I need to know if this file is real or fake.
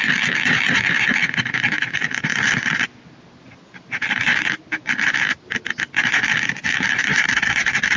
real